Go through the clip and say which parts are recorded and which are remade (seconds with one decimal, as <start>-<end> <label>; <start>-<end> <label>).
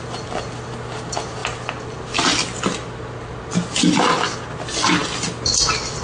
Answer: 0.0-6.0 recorded